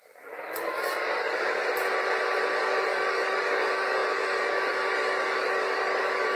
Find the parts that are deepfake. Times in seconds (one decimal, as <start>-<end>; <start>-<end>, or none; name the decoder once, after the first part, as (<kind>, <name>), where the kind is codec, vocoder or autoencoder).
0.0-1.6 (codec, DAC); 2.6-6.4